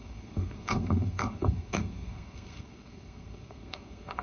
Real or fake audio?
fake